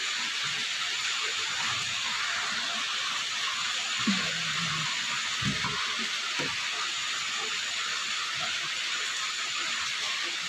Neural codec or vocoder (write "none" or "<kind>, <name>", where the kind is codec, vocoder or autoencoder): none